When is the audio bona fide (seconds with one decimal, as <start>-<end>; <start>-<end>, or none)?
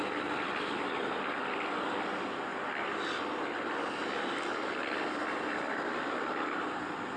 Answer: 0.0-7.2